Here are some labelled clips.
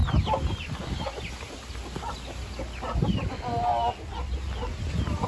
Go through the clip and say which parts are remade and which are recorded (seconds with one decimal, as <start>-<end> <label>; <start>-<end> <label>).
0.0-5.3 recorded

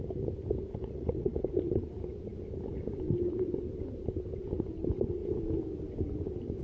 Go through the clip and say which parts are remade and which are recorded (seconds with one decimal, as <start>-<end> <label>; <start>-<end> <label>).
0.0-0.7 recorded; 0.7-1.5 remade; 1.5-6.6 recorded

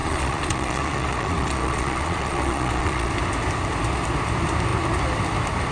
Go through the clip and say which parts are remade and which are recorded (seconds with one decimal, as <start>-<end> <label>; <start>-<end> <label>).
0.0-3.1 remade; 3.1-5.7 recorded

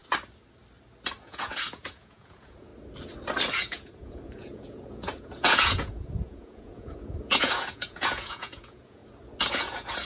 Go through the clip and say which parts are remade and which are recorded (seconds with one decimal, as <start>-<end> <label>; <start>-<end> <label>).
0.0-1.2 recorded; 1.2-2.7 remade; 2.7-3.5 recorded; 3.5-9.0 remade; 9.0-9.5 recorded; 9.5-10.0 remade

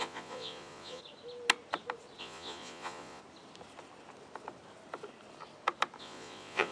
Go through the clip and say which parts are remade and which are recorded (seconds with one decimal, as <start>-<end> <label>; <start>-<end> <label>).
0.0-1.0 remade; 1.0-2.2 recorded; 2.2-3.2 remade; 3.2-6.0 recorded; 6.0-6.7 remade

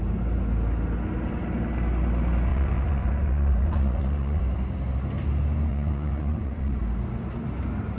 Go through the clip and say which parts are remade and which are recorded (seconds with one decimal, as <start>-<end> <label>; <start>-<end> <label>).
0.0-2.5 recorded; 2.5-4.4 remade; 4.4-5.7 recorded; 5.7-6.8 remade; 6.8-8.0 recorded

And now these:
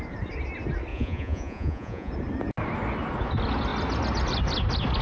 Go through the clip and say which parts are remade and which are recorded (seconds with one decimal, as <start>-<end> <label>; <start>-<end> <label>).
0.0-0.9 recorded; 0.9-2.1 remade; 2.1-5.0 recorded